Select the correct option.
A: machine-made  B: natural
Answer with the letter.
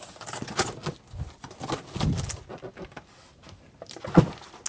B